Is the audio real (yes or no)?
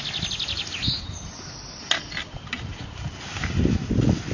yes